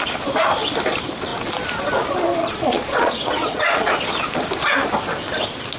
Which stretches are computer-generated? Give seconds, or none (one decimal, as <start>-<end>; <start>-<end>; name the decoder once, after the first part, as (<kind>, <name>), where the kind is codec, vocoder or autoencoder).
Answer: 2.4-3.9 (vocoder, Vocos)